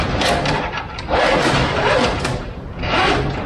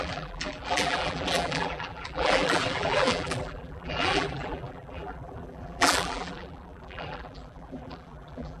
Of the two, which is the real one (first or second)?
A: first